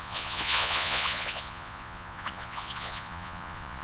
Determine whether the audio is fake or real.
fake